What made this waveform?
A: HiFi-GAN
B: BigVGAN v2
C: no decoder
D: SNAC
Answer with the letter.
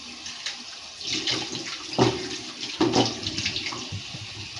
C